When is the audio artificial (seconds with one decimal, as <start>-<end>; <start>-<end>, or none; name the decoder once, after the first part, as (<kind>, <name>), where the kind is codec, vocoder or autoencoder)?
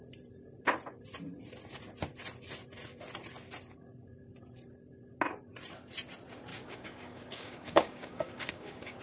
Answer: 6.5-9.0 (codec, DAC)